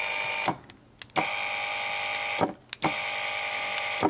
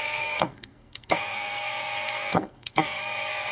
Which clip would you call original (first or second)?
first